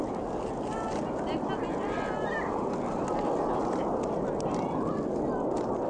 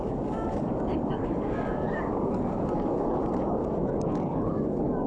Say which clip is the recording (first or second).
first